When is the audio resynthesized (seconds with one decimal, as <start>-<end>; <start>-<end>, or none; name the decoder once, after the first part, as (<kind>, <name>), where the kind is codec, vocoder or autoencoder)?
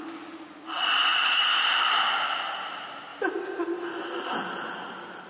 1.1-1.8 (vocoder, BigVGAN v2)